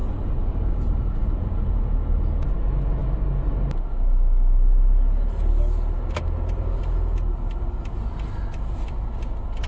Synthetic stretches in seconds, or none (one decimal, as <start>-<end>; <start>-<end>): 0.0-1.8